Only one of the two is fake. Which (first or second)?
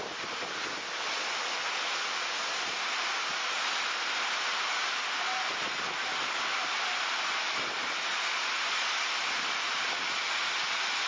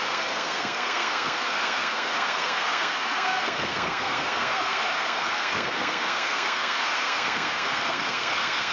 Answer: second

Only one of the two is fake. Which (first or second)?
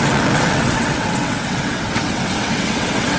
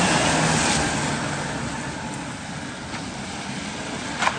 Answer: first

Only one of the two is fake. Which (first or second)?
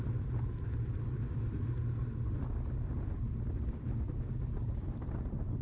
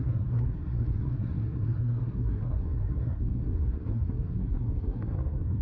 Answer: second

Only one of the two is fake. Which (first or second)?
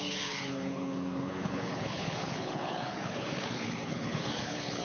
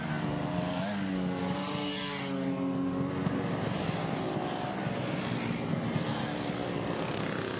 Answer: first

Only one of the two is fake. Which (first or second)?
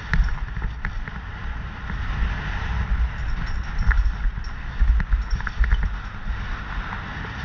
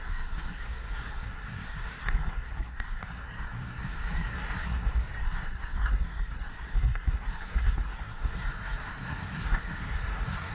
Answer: second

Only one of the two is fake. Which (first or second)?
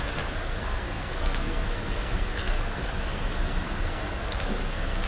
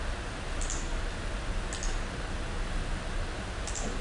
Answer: first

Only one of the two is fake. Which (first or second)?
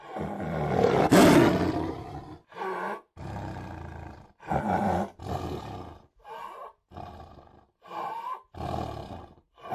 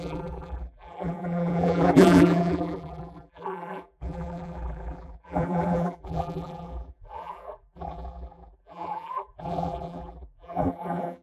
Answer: second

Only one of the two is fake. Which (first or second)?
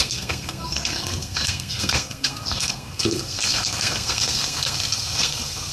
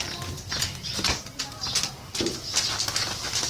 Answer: first